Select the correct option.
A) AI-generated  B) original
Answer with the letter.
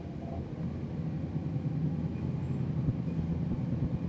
B